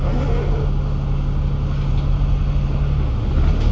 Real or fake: real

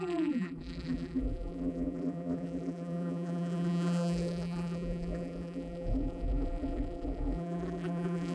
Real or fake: fake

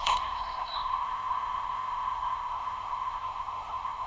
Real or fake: fake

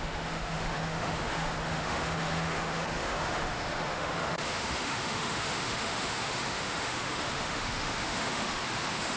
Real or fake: fake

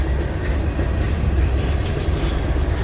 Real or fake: real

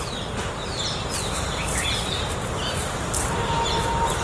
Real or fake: real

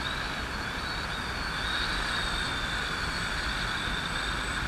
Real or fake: real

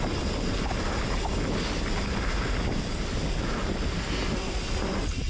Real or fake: real